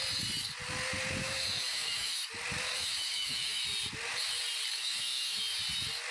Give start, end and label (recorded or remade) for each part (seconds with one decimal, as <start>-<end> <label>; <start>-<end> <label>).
0.0-1.2 recorded; 1.2-2.3 remade; 2.3-2.7 recorded; 2.7-3.6 remade; 3.6-4.8 recorded; 4.8-5.4 remade; 5.4-6.1 recorded